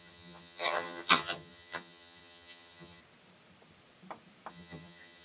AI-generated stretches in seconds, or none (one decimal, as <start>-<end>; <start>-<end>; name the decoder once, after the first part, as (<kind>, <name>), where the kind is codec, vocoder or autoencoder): 0.0-3.0 (vocoder, HiFi-GAN); 4.5-5.2